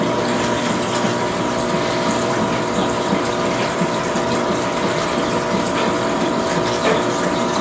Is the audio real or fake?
real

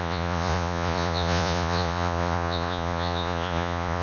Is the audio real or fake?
fake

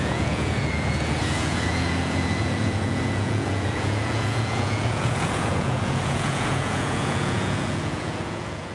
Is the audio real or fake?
fake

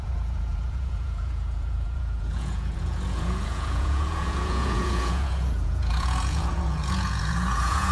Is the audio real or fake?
fake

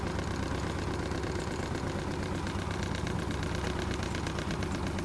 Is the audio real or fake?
real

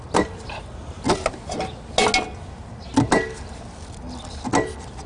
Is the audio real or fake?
real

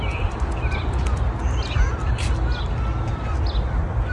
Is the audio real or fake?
real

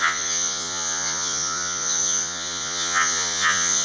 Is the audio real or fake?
fake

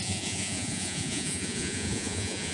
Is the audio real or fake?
fake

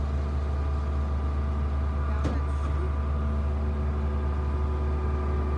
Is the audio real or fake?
real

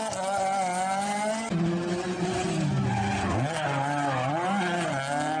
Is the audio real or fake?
real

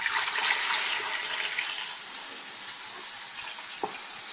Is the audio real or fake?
real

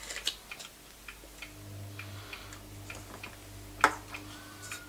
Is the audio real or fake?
real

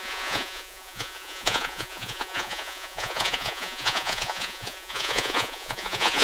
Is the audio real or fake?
fake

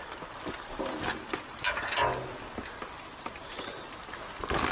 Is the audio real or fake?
real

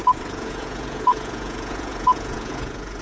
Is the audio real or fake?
fake